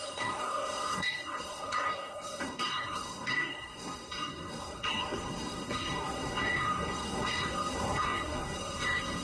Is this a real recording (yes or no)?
no